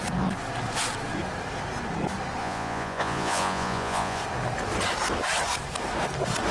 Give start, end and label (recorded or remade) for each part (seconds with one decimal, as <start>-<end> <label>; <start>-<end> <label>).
0.0-2.4 recorded; 2.4-4.2 remade; 4.2-6.5 recorded